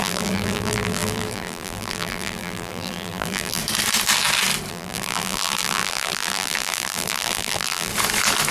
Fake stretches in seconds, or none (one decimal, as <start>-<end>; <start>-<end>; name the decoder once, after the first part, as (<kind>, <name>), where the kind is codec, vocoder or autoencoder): 0.0-3.6 (vocoder, BigVGAN v2); 4.7-7.9